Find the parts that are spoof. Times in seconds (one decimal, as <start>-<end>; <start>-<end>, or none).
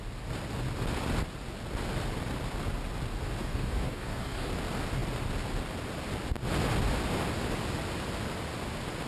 3.4-4.5